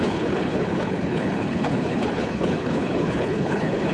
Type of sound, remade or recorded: remade